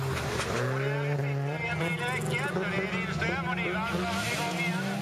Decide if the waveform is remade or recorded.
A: recorded